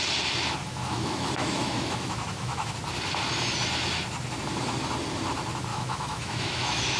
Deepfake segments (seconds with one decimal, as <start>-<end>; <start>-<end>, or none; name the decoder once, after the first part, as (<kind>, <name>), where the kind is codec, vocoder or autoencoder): 0.6-2.7 (autoencoder, DAC-VAE); 5.7-7.0